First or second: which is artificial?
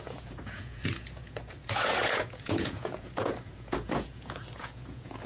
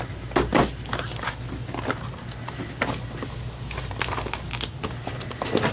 first